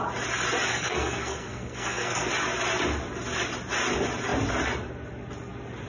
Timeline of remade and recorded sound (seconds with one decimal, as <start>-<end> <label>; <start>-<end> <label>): 0.0-0.7 recorded; 0.7-2.3 remade; 2.3-5.9 recorded